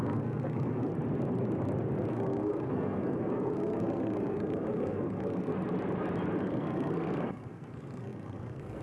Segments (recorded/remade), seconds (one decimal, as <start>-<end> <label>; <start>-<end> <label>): 0.0-0.9 remade; 0.9-2.1 recorded; 2.1-5.5 remade; 5.5-6.4 recorded; 6.4-8.8 remade